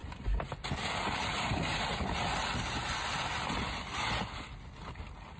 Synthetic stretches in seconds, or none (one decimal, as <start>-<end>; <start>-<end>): none